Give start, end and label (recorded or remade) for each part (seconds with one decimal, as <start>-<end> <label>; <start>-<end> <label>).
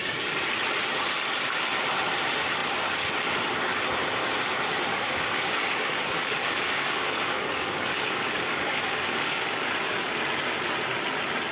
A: 0.0-4.9 recorded; 4.9-10.1 remade; 10.1-11.5 recorded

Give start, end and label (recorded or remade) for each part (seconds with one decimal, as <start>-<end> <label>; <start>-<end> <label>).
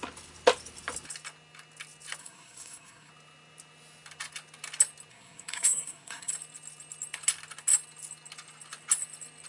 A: 0.0-2.2 recorded; 2.2-3.1 remade; 3.1-5.1 recorded; 5.1-6.3 remade; 6.3-9.5 recorded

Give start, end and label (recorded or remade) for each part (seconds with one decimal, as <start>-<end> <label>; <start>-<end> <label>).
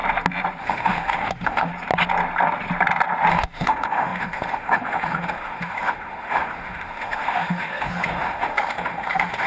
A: 0.0-0.6 recorded; 0.6-1.7 remade; 1.7-3.3 recorded; 3.3-9.5 remade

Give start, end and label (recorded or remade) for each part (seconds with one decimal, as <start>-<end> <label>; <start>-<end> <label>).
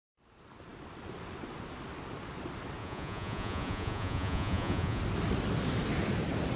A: 0.0-2.8 recorded; 2.8-5.0 remade; 5.0-6.6 recorded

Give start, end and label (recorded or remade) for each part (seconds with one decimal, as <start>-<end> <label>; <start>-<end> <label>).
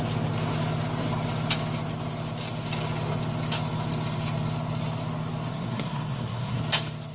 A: 0.0-5.5 recorded; 5.5-6.6 remade; 6.6-7.1 recorded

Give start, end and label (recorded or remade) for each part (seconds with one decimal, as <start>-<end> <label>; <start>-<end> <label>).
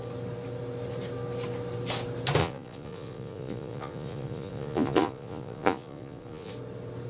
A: 0.0-2.4 recorded; 2.4-6.5 remade; 6.5-7.1 recorded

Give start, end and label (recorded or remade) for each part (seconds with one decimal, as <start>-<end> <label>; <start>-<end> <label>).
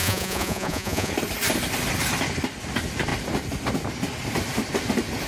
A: 0.0-1.1 remade; 1.1-5.3 recorded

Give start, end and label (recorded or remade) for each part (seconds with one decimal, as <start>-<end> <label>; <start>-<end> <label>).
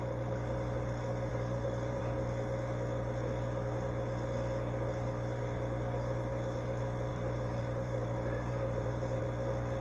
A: 0.0-1.3 recorded; 1.3-2.0 remade; 2.0-7.1 recorded; 7.1-9.2 remade; 9.2-9.8 recorded